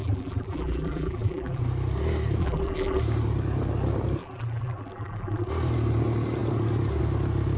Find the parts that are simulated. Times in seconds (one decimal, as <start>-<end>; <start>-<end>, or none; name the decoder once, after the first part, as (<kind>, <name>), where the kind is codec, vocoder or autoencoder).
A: 0.0-1.6 (vocoder, BigVGAN v2); 2.4-3.0; 4.2-5.5